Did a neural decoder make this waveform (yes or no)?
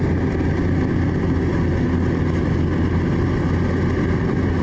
no